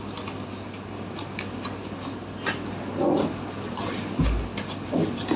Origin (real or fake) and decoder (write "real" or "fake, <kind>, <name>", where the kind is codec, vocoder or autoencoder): real